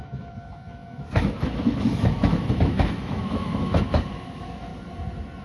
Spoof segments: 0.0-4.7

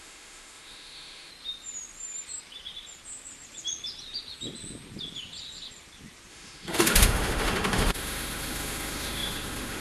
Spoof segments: 0.0-1.3; 6.3-9.8

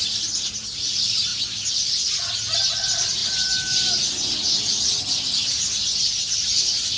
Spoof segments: none

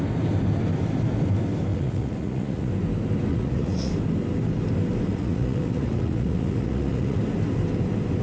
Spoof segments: 1.7-2.7; 3.3-3.9; 5.1-7.2

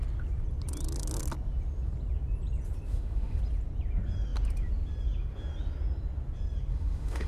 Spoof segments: 2.9-3.4; 6.7-7.3

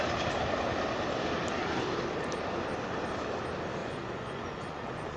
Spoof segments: 3.8-5.2